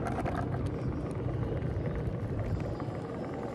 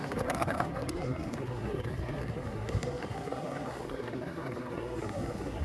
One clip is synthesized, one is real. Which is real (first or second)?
first